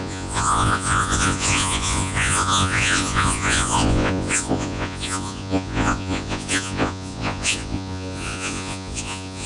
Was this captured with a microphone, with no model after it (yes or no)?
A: no